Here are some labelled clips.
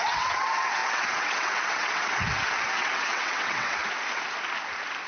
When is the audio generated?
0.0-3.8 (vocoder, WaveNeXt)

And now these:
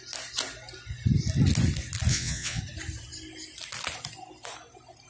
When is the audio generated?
2.1-2.6 (vocoder, WaveNeXt)